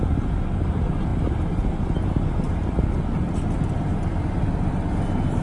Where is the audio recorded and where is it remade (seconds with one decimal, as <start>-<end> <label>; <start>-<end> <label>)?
0.0-5.4 recorded